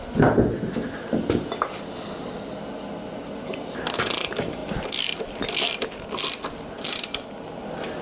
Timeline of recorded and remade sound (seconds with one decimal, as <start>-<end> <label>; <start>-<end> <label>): 0.0-8.0 recorded